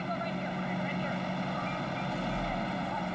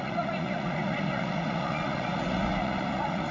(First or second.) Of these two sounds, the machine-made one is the second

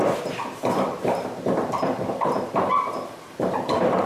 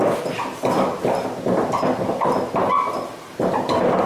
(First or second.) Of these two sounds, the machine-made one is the first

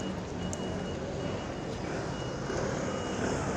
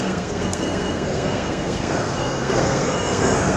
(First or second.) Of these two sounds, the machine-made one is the second